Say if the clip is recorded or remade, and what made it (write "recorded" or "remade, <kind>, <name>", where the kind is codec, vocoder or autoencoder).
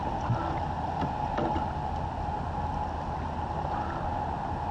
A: recorded